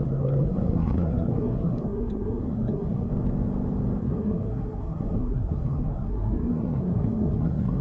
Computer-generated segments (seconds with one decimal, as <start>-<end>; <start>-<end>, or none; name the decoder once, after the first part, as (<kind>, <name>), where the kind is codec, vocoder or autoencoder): 0.0-3.1 (codec, SNAC); 4.0-7.8